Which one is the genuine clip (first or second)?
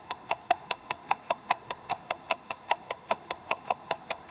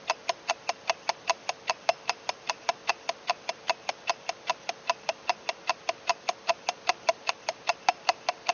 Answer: second